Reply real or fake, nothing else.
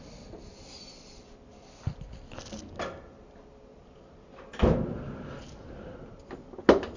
real